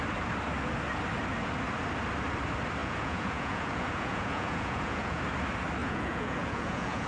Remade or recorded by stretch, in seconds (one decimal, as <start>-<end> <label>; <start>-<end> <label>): 0.0-2.8 recorded; 2.8-5.2 remade; 5.2-5.8 recorded; 5.8-7.1 remade